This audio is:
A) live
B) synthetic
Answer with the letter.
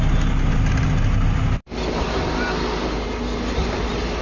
A